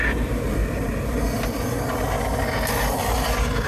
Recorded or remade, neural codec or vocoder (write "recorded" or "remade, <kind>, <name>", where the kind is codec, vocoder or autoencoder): recorded